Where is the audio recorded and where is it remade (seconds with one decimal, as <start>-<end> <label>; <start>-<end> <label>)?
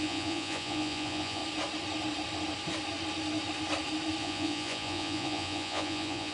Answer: 0.0-1.4 remade; 1.4-4.2 recorded; 4.2-6.3 remade